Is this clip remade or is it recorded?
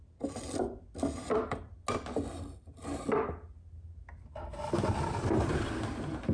recorded